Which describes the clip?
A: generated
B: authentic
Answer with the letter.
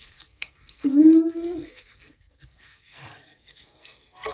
A